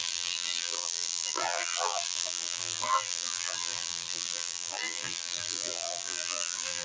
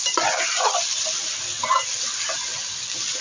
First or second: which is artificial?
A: first